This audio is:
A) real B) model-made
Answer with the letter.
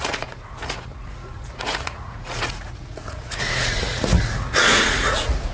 B